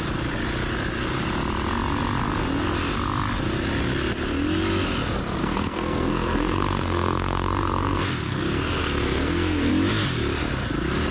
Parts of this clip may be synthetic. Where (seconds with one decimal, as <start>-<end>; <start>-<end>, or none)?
5.4-9.7